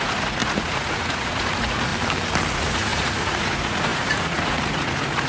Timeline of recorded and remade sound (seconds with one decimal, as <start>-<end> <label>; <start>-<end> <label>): 0.0-1.9 remade; 1.9-2.5 recorded; 2.5-5.3 remade